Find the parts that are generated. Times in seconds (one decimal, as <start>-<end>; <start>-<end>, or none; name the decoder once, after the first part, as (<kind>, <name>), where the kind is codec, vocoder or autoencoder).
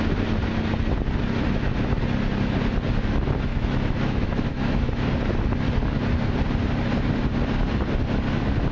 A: 3.5-5.0 (autoencoder, DAC-VAE)